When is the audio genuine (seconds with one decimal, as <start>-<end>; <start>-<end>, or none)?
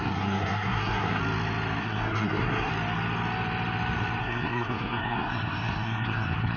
1.2-1.8; 2.7-4.2